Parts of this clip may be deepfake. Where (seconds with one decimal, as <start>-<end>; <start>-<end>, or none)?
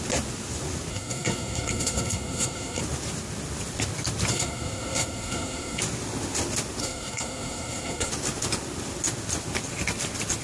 0.9-2.8; 4.3-5.8; 6.8-8.1